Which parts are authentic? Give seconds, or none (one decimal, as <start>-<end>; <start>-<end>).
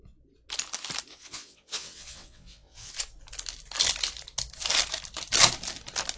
0.0-1.1; 2.9-6.2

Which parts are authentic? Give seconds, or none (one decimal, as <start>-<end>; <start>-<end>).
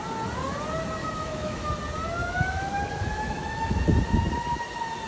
0.0-1.0; 1.7-2.2; 3.8-5.1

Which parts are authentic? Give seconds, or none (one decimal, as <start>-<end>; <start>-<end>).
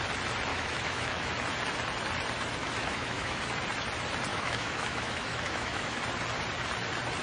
0.0-0.5; 1.3-2.6; 3.4-4.3; 6.0-7.2